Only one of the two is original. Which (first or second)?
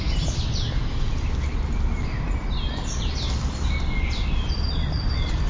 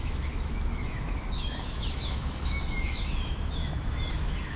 first